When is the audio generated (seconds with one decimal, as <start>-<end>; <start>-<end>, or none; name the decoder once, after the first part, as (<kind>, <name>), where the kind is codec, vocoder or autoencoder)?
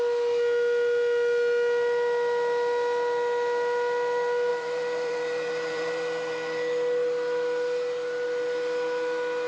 4.5-6.3 (vocoder, BigVGAN v2)